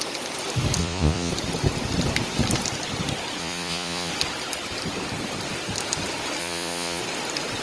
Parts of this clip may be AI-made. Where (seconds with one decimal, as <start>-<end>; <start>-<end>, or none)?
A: 0.8-1.3; 3.4-4.1; 6.4-7.0